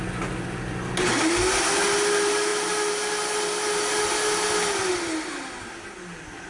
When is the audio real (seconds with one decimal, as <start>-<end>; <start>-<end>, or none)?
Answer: 0.0-6.5

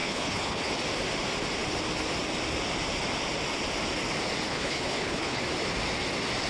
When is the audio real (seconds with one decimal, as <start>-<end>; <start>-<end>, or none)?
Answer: 0.7-4.5; 5.4-6.5

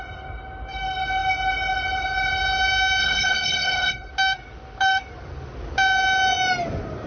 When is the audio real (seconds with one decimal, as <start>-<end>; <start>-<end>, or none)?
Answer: 0.0-3.0; 4.1-7.1

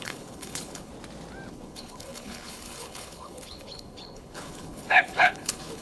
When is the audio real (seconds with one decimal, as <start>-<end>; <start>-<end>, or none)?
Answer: 0.9-1.5

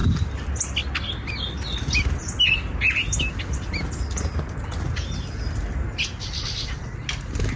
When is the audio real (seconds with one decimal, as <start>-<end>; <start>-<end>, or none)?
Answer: 0.0-7.6